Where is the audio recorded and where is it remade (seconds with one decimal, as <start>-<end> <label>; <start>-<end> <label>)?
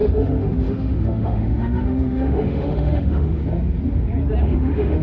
0.0-3.4 remade; 3.4-4.4 recorded; 4.4-5.0 remade